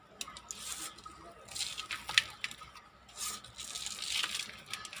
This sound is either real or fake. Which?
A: real